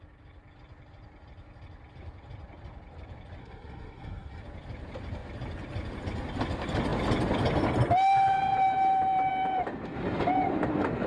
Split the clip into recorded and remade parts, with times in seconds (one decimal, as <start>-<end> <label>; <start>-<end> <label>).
0.0-3.4 recorded; 3.4-4.4 remade; 4.4-11.1 recorded